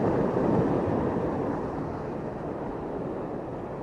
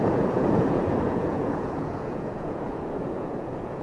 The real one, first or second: first